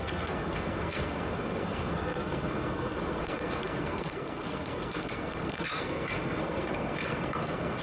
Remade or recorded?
remade